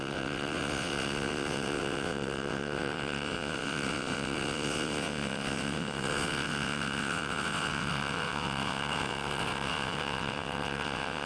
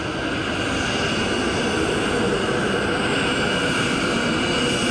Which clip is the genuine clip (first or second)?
second